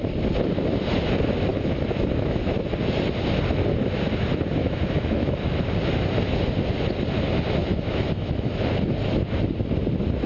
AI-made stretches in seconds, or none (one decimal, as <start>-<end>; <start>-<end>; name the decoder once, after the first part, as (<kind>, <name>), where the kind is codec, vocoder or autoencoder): 1.5-2.7 (autoencoder, DAC-VAE); 4.6-5.7; 7.6-8.6